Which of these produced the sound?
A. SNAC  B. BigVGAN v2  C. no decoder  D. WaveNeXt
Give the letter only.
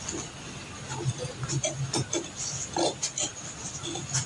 C